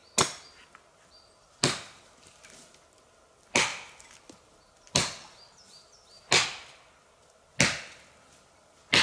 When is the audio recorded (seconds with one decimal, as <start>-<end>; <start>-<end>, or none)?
0.0-9.0